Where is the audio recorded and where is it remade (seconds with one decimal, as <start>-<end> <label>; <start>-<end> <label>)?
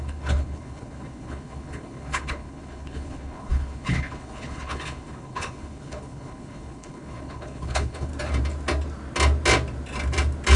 0.0-8.1 remade; 8.1-10.6 recorded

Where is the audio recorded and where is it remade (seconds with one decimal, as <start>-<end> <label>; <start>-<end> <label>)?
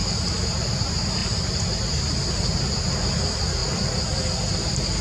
0.0-5.0 recorded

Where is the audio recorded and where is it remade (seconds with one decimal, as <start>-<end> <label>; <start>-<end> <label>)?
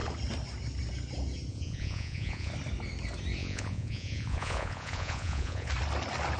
0.0-1.5 recorded; 1.5-2.5 remade; 2.5-3.4 recorded; 3.4-5.7 remade; 5.7-6.4 recorded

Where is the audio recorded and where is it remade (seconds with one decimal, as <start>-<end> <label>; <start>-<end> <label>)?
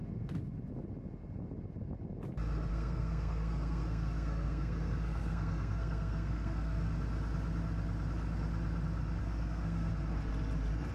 0.0-2.7 recorded; 2.7-6.9 remade; 6.9-9.2 recorded; 9.2-9.9 remade; 9.9-10.9 recorded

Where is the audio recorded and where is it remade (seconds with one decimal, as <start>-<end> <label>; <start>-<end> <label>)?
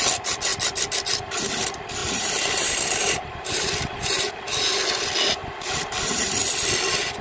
0.0-2.0 recorded; 2.0-4.3 remade; 4.3-5.4 recorded; 5.4-6.3 remade; 6.3-7.2 recorded